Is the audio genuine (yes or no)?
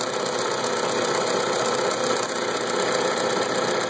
yes